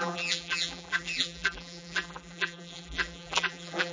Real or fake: fake